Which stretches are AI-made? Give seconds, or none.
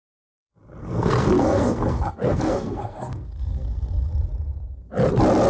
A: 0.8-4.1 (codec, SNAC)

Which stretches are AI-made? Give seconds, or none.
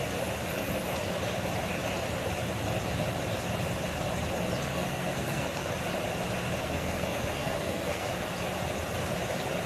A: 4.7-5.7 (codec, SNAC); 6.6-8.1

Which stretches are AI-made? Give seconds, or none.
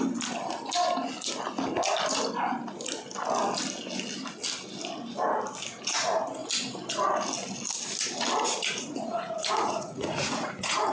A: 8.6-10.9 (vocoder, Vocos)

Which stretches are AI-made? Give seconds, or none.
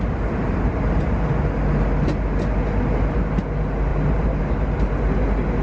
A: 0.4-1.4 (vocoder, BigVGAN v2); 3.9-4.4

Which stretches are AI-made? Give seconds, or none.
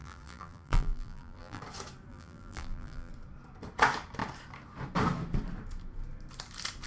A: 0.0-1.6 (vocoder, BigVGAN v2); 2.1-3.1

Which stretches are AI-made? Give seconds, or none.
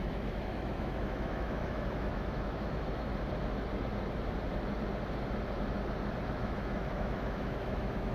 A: 0.0-3.1 (autoencoder, DAC-VAE); 6.3-8.1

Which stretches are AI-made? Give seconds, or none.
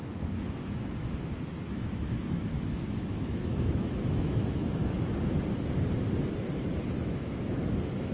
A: 0.0-4.8 (autoencoder, DAC-VAE); 7.0-8.1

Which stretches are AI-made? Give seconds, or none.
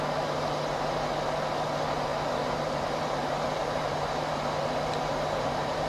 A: 2.1-5.9 (vocoder, BigVGAN v2)